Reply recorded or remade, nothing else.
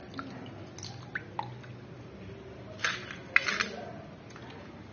recorded